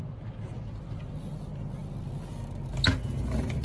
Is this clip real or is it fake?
real